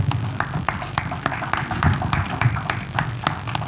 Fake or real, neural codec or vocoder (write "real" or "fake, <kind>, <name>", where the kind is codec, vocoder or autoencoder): real